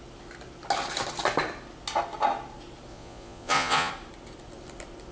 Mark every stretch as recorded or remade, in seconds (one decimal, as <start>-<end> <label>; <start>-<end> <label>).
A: 0.0-2.9 recorded; 2.9-3.9 remade; 3.9-5.1 recorded